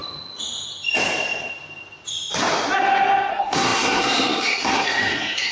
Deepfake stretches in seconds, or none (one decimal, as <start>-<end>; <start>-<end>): 3.3-5.5